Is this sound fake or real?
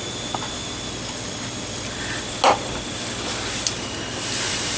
real